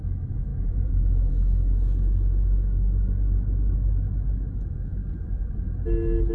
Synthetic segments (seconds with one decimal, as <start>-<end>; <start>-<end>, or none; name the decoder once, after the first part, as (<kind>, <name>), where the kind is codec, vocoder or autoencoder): 0.0-5.0 (autoencoder, DAC-VAE)